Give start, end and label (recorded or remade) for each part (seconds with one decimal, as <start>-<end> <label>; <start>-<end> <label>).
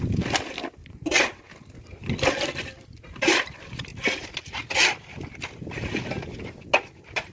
0.0-0.8 recorded; 0.8-1.4 remade; 1.4-7.3 recorded